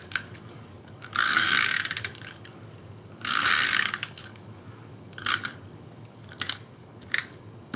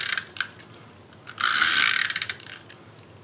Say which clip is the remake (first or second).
first